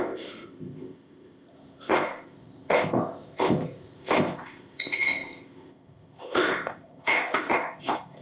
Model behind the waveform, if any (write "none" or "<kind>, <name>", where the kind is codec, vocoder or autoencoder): codec, ZipCodec